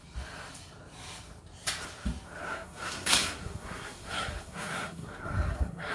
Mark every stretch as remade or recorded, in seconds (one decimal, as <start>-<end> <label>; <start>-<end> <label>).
0.0-2.4 recorded; 2.4-5.9 remade